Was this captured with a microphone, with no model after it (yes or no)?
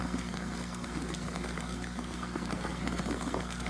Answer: no